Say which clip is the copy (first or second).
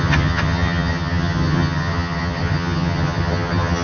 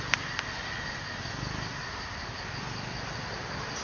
first